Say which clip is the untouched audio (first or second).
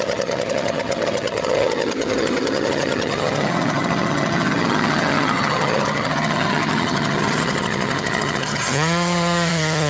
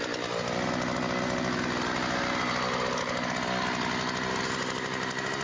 second